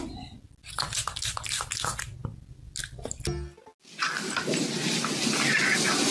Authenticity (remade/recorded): recorded